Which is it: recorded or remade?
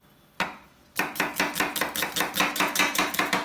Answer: recorded